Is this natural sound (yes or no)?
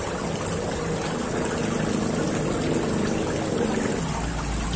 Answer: yes